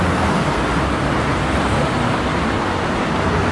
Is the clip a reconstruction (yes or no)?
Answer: no